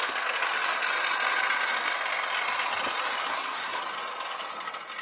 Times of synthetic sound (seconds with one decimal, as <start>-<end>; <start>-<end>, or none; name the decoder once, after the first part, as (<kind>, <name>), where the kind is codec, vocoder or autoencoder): 3.3-3.8 (codec, SNAC)